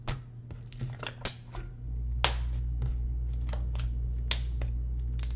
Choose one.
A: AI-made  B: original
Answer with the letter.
B